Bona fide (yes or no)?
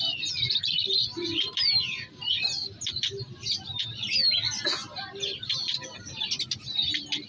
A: yes